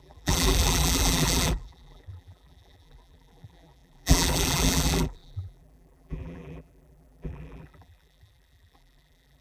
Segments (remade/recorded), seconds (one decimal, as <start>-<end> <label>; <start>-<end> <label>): 0.0-9.4 remade